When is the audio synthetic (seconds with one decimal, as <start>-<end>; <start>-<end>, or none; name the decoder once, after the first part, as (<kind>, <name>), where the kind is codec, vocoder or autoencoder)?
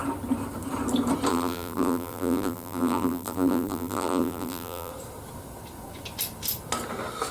1.3-4.9 (vocoder, BigVGAN v2)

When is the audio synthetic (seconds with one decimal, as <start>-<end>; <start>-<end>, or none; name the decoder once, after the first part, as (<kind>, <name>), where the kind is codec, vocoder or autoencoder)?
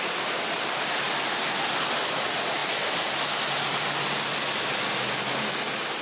none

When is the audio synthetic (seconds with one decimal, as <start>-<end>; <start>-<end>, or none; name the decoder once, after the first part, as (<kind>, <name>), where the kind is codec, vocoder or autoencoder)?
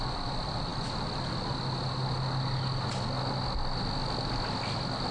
none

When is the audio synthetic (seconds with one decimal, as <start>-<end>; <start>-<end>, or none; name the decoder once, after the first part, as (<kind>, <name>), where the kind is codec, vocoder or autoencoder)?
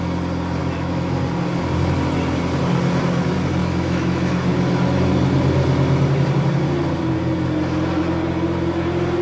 0.6-1.2 (autoencoder, DAC-VAE); 3.6-4.5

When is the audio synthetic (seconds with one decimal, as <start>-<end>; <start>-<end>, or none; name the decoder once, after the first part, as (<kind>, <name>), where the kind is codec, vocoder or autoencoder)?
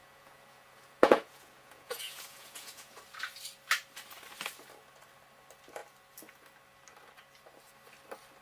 0.0-3.0 (vocoder, Vocos)